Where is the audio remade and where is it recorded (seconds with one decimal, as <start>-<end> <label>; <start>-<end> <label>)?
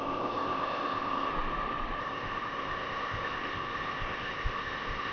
0.0-1.3 remade; 1.3-2.0 recorded; 2.0-5.1 remade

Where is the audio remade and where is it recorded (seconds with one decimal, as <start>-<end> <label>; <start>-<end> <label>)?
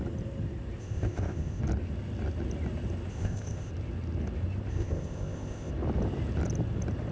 0.0-0.8 recorded; 0.8-1.6 remade; 1.6-3.1 recorded; 3.1-3.7 remade; 3.7-4.7 recorded; 4.7-5.7 remade; 5.7-7.1 recorded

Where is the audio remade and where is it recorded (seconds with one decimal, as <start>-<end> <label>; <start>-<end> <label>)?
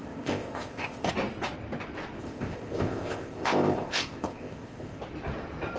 0.0-1.1 remade; 1.1-2.2 recorded; 2.2-5.0 remade; 5.0-5.8 recorded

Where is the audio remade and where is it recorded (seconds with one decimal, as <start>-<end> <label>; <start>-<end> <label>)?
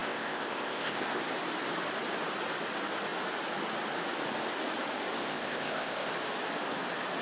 0.0-1.2 remade; 1.2-5.2 recorded; 5.2-6.1 remade; 6.1-7.2 recorded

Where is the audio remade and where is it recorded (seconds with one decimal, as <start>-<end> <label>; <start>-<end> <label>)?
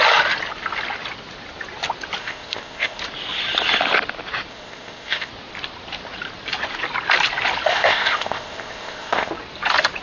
0.0-2.2 recorded; 2.2-3.0 remade; 3.0-4.5 recorded; 4.5-5.3 remade; 5.3-7.7 recorded; 7.7-9.3 remade; 9.3-10.0 recorded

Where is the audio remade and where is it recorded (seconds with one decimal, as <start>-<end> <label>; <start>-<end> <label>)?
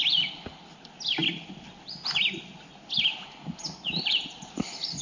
0.0-5.0 recorded